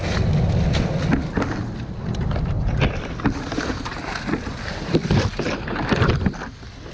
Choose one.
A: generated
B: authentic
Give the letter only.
B